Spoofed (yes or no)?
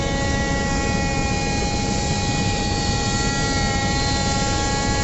no